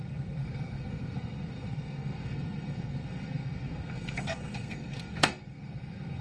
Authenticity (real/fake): fake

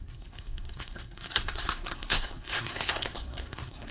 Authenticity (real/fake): fake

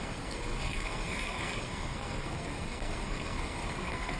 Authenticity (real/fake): fake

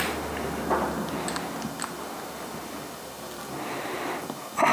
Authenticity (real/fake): real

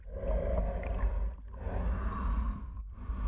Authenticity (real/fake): real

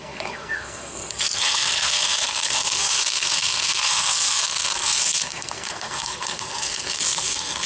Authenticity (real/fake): fake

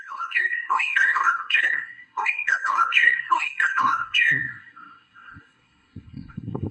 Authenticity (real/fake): fake